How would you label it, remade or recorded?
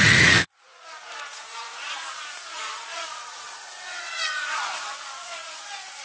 remade